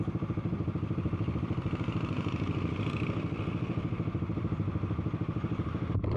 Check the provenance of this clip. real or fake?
real